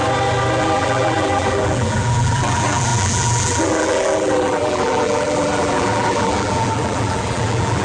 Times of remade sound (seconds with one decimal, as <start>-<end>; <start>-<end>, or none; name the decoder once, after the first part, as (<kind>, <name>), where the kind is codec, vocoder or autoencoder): 0.6-7.8 (vocoder, BigVGAN v2)